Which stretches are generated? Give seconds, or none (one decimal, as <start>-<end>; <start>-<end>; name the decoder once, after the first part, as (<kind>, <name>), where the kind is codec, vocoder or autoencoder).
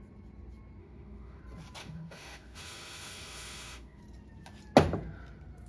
0.8-1.4 (autoencoder, DAC-VAE); 1.8-4.0